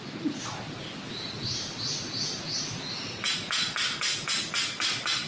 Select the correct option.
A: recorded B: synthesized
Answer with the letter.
A